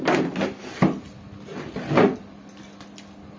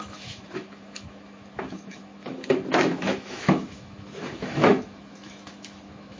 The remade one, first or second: second